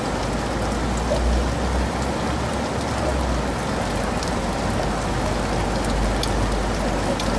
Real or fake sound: real